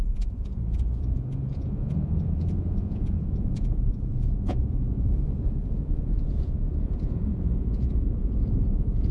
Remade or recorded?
remade